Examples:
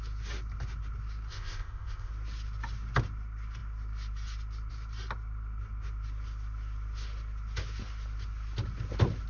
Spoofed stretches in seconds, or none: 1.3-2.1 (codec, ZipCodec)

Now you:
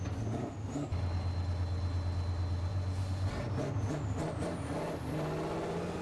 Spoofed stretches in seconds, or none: 2.7-3.3 (vocoder, Vocos)

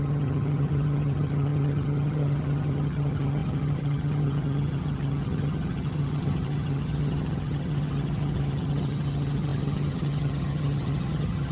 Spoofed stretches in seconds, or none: 0.0-11.5 (vocoder, HiFi-GAN)

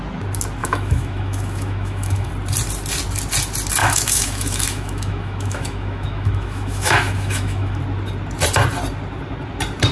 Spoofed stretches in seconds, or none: 0.6-2.3 (autoencoder, DAC-VAE); 3.8-7.8

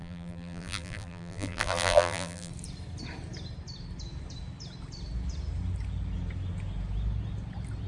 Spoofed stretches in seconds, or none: 0.0-2.5 (vocoder, BigVGAN v2)

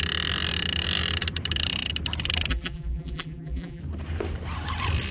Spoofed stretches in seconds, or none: 2.5-3.8 (vocoder, BigVGAN v2)

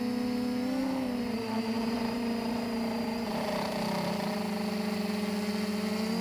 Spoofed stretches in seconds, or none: 0.8-4.3 (vocoder, BigVGAN v2)